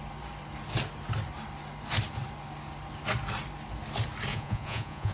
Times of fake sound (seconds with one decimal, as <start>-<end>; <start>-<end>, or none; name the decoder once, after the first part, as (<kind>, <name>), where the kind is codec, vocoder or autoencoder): 4.3-5.1 (vocoder, Vocos)